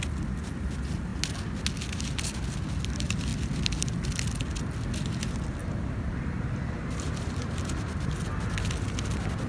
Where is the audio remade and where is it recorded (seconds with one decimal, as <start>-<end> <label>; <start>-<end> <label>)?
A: 0.0-5.6 recorded; 5.6-8.1 remade; 8.1-9.5 recorded